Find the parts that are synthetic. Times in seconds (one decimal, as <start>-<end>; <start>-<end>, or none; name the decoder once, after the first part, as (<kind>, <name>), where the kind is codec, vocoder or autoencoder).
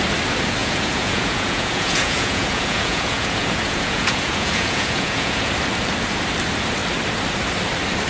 0.6-5.5 (vocoder, Vocos)